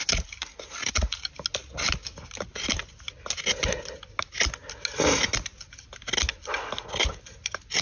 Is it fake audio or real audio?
real